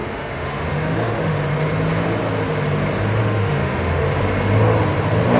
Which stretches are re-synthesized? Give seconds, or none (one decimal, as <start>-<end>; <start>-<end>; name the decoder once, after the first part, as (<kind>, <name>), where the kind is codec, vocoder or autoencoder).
0.0-1.4 (autoencoder, DAC-VAE); 3.2-4.0